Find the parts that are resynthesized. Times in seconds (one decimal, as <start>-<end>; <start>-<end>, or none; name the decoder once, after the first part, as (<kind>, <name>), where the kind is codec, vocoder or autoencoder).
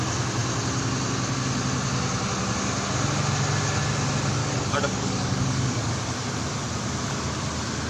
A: 4.4-5.9 (codec, DAC)